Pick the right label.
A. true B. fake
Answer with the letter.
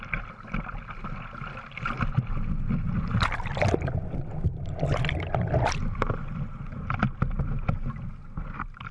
A